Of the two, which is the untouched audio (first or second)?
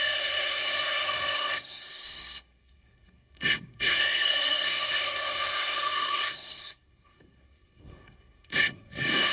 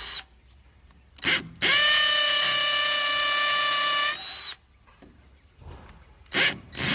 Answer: second